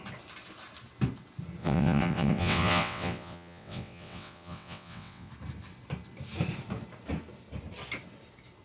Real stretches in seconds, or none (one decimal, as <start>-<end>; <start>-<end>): 0.0-1.6; 5.3-8.6